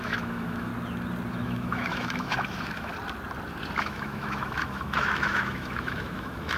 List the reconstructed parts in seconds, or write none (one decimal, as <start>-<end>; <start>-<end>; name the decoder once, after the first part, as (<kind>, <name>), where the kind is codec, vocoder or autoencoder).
0.0-0.7 (autoencoder, DAC-VAE); 1.3-2.9; 3.8-6.6